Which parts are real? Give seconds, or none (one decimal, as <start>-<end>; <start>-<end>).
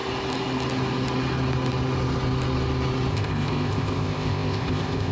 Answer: 0.0-3.1